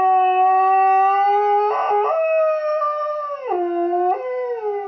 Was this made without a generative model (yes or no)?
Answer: yes